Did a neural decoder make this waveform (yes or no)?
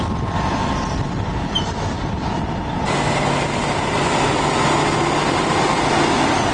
no